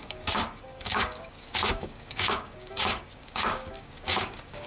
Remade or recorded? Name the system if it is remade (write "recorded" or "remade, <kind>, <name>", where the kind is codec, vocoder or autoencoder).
remade, codec, DAC